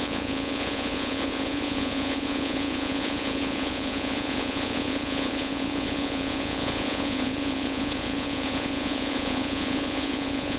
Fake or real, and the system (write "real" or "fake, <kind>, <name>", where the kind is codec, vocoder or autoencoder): fake, vocoder, Vocos